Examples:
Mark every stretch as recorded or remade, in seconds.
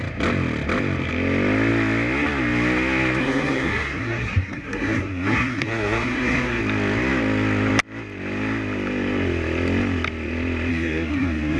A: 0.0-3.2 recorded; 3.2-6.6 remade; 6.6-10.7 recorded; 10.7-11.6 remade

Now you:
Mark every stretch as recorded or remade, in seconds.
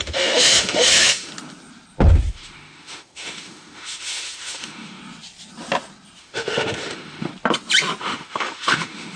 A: 0.0-1.3 remade; 1.3-2.3 recorded; 2.3-5.0 remade; 5.0-6.2 recorded; 6.2-7.3 remade; 7.3-8.0 recorded; 8.0-9.2 remade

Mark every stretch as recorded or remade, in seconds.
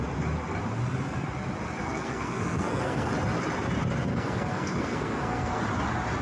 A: 0.0-1.8 recorded; 1.8-3.1 remade; 3.1-4.1 recorded; 4.1-5.6 remade; 5.6-6.2 recorded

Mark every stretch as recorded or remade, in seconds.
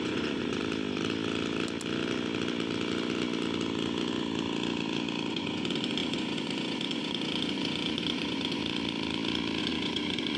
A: 0.0-0.6 remade; 0.6-5.3 recorded; 5.3-8.6 remade; 8.6-9.6 recorded; 9.6-10.4 remade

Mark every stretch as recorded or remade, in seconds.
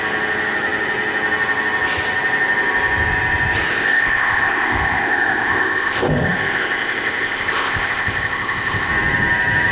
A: 0.0-3.7 recorded; 3.7-8.9 remade; 8.9-9.7 recorded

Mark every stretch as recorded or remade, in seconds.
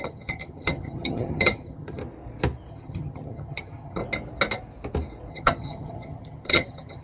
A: 0.0-2.0 remade; 2.0-2.7 recorded; 2.7-4.0 remade; 4.0-5.3 recorded; 5.3-7.0 remade